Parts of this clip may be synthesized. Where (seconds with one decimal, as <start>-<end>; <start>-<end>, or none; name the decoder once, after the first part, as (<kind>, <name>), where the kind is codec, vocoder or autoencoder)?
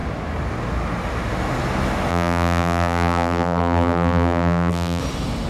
2.1-5.0 (vocoder, BigVGAN v2)